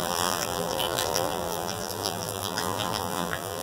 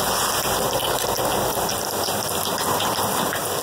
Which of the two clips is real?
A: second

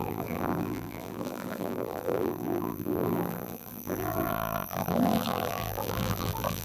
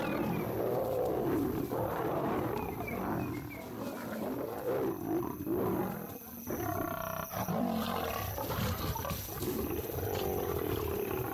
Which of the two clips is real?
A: second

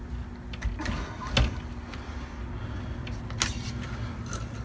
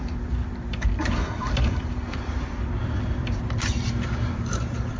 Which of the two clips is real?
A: first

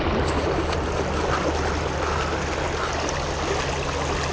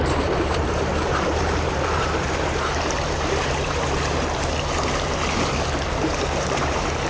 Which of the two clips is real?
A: first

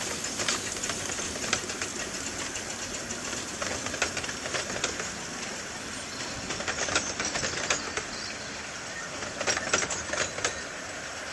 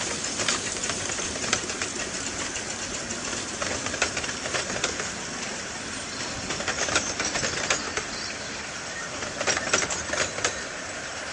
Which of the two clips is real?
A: first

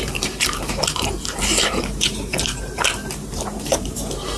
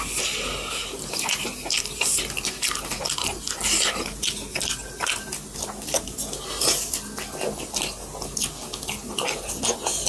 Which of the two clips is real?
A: second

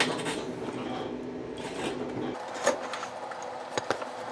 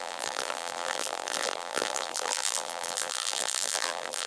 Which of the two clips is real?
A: first